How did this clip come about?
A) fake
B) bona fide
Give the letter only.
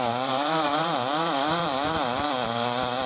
A